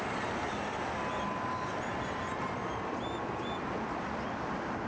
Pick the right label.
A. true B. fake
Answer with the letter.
A